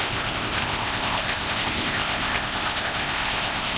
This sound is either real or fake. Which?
fake